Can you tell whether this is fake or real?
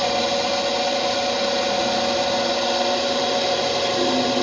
real